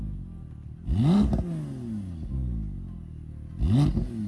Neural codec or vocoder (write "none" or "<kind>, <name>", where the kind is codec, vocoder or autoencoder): none